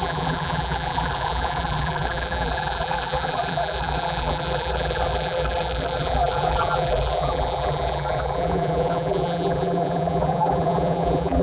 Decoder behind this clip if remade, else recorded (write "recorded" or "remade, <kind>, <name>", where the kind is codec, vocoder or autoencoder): remade, vocoder, BigVGAN v2